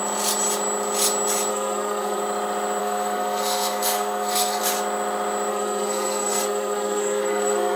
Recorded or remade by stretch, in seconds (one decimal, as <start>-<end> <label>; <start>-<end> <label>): 0.0-1.5 recorded; 1.5-2.2 remade; 2.2-2.8 recorded; 2.8-4.6 remade; 4.6-5.5 recorded; 5.5-7.8 remade